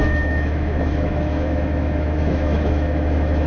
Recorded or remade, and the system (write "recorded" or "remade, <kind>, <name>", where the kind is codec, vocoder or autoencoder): remade, autoencoder, DAC-VAE